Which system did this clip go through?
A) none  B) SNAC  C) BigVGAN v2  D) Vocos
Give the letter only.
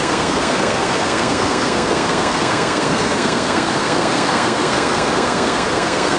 B